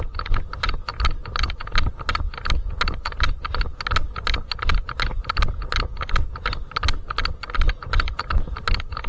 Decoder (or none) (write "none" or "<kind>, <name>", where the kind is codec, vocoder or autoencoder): none